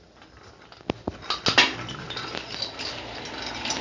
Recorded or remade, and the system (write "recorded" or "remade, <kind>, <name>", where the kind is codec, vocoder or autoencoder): recorded